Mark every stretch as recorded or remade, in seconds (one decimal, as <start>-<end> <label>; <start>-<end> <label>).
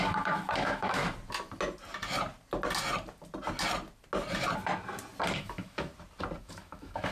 0.0-1.0 remade; 1.0-5.3 recorded; 5.3-5.9 remade; 5.9-6.4 recorded; 6.4-7.1 remade